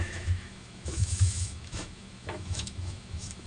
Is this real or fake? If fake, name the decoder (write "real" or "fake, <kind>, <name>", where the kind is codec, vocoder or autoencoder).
fake, autoencoder, DAC-VAE